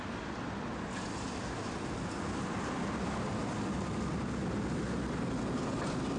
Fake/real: real